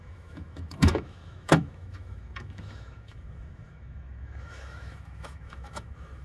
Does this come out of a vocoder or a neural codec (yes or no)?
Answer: yes